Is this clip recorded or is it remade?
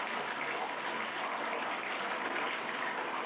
recorded